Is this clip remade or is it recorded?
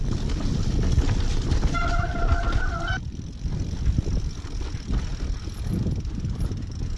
recorded